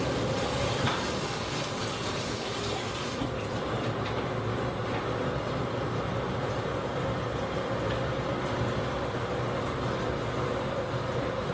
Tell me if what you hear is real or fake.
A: real